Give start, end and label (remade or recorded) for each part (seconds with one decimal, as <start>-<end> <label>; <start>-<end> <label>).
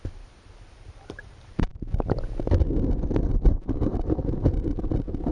0.0-1.7 remade; 1.7-3.5 recorded; 3.5-5.3 remade